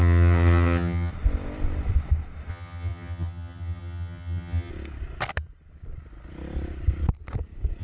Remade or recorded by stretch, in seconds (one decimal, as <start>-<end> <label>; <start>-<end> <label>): 0.0-1.1 remade; 1.1-2.5 recorded; 2.5-4.7 remade; 4.7-7.8 recorded